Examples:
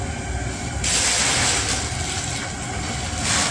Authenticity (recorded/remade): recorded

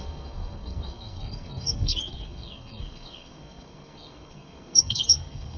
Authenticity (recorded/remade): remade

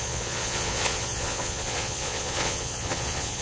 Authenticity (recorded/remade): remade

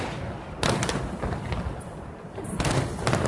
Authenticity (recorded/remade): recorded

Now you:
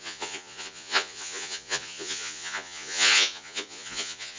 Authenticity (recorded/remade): remade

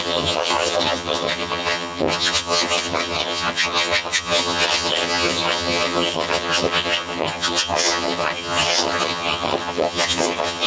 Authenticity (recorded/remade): remade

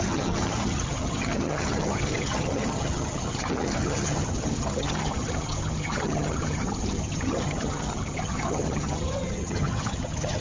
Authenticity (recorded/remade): remade